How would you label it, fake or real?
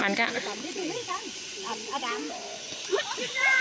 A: fake